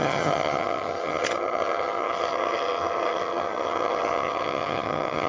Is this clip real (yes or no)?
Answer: no